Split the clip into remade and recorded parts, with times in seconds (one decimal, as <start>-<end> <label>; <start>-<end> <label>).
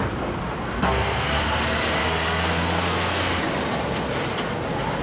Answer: 0.0-0.6 recorded; 0.6-1.4 remade; 1.4-2.0 recorded; 2.0-3.4 remade; 3.4-5.0 recorded